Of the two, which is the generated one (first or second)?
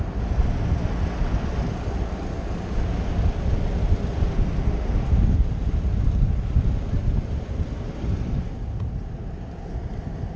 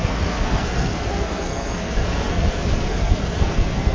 second